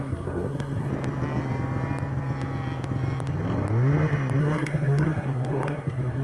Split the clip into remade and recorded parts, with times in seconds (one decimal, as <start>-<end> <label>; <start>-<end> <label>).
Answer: 0.0-0.9 remade; 0.9-4.4 recorded; 4.4-6.2 remade